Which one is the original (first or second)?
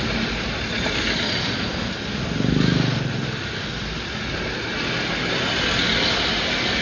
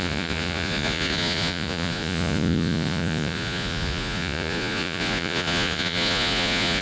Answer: first